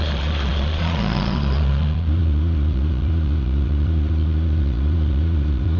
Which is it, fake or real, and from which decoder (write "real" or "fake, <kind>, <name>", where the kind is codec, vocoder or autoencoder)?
fake, vocoder, Vocos